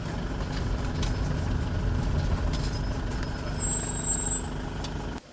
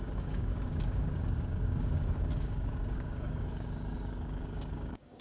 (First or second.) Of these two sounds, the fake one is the second